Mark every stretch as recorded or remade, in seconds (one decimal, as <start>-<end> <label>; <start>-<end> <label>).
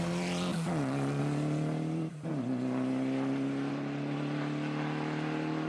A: 0.0-0.5 remade; 0.5-1.2 recorded; 1.2-2.3 remade; 2.3-3.7 recorded; 3.7-5.7 remade